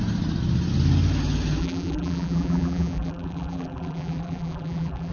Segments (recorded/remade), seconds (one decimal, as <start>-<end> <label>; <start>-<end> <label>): 0.0-1.6 recorded; 1.6-5.1 remade